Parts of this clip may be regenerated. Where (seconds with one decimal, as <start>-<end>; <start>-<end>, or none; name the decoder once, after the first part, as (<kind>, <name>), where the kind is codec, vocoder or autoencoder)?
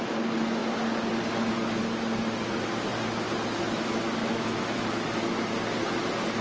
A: 4.2-4.8 (autoencoder, DAC-VAE)